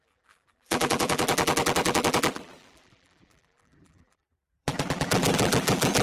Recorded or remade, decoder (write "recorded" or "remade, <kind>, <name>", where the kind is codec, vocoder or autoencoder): remade, vocoder, BigVGAN v2